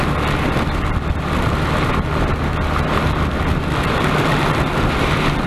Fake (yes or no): no